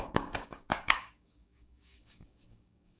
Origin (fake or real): fake